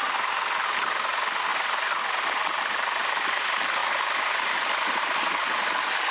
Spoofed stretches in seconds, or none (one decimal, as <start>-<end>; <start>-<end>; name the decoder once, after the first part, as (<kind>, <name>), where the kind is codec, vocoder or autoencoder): none